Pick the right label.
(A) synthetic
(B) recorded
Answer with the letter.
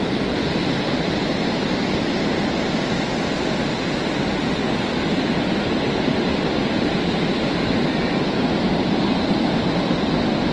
B